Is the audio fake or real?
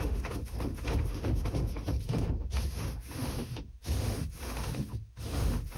fake